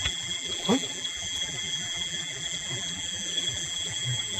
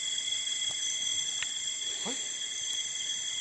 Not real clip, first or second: first